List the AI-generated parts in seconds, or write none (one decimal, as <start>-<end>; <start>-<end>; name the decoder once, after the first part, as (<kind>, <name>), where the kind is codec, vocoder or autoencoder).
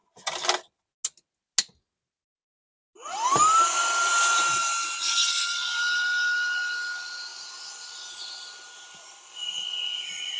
none